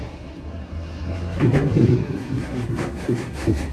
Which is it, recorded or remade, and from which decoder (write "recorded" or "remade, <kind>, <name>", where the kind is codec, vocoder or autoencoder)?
remade, codec, SNAC